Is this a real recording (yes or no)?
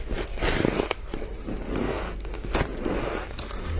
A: yes